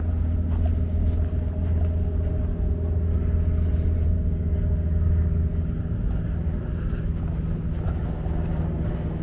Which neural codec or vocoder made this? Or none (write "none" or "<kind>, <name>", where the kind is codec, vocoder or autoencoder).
none